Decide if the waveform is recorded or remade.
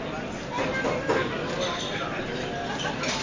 recorded